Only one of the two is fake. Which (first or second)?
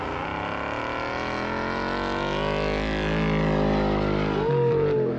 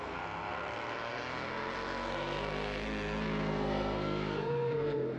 second